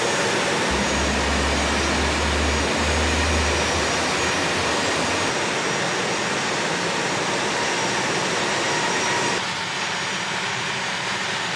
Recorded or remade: recorded